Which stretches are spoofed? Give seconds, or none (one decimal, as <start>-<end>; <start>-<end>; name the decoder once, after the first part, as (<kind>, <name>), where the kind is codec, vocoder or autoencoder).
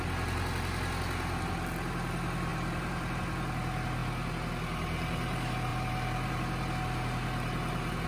2.5-3.2 (vocoder, BigVGAN v2); 5.7-6.3